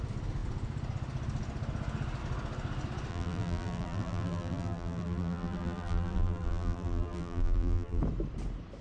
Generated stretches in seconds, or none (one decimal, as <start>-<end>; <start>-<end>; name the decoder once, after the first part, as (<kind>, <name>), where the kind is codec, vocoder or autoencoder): 3.1-8.0 (vocoder, BigVGAN v2)